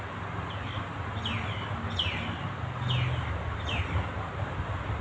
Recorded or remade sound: recorded